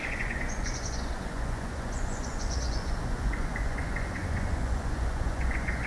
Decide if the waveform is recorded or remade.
remade